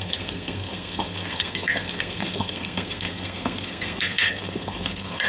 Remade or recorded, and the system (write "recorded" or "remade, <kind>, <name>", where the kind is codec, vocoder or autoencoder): remade, codec, SNAC